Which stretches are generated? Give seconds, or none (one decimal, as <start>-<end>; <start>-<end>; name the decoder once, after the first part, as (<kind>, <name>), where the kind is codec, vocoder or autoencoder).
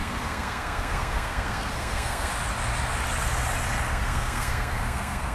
0.0-2.3 (codec, SNAC); 3.9-5.3